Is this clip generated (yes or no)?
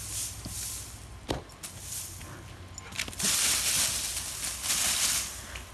no